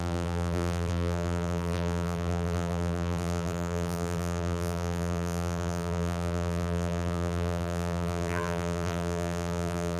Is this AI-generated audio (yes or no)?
yes